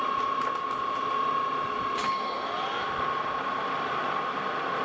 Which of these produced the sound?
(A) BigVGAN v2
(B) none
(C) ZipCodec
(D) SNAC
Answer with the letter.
B